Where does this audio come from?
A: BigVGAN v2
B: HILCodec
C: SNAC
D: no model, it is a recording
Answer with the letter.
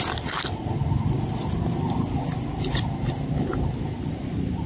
D